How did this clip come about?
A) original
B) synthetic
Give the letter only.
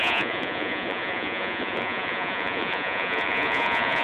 B